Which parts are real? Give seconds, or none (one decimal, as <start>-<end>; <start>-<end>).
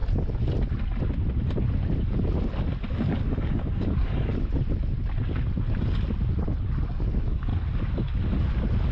0.0-3.0; 4.3-6.9; 7.5-8.9